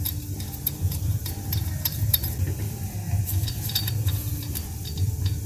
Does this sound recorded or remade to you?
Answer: remade